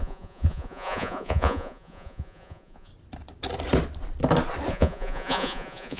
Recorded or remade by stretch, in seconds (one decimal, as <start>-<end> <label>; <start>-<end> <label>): 0.0-2.9 remade; 2.9-4.7 recorded; 4.7-6.0 remade